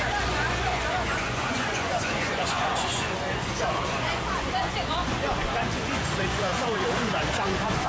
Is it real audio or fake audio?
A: fake